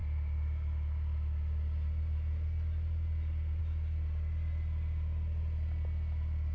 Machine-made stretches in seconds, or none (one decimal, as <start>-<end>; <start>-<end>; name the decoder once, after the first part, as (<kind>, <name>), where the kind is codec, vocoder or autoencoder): none